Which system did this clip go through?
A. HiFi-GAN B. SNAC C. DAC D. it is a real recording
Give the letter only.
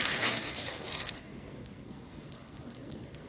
B